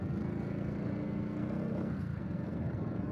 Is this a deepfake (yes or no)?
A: yes